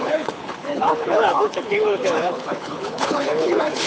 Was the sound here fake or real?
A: fake